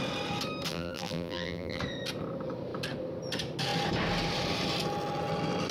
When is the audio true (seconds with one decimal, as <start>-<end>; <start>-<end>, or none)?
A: 0.0-0.7; 1.8-5.7